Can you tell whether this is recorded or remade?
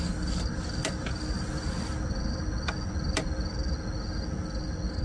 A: recorded